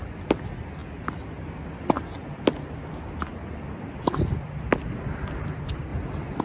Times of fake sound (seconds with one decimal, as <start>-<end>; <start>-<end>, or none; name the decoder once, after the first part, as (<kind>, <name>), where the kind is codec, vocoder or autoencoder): none